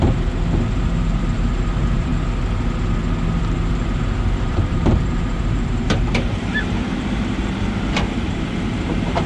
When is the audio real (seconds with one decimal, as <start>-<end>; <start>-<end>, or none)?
2.1-3.7